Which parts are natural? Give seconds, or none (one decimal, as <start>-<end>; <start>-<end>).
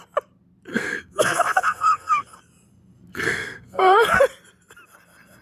0.0-0.7; 2.4-3.1; 4.2-5.4